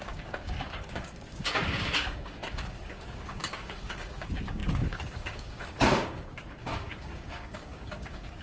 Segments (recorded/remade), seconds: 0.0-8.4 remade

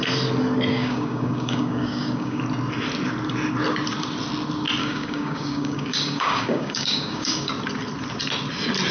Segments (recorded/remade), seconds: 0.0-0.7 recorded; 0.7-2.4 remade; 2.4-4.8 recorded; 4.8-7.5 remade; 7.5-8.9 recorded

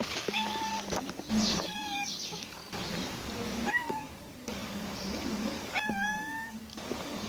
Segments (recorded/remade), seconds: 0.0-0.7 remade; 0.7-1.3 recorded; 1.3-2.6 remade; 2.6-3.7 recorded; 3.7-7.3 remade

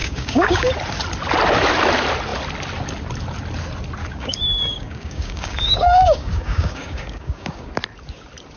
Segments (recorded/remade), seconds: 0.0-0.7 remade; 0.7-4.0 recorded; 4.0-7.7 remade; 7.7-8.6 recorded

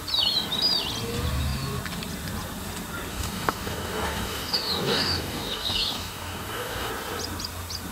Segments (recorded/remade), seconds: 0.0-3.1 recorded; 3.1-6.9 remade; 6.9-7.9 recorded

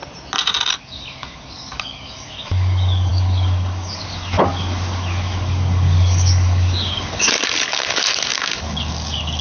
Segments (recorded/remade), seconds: 0.0-0.7 recorded; 0.7-9.4 remade